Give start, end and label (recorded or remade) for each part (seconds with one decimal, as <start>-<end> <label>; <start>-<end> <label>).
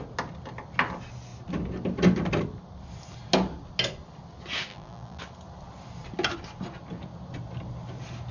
0.0-4.7 recorded; 4.7-5.2 remade; 5.2-8.3 recorded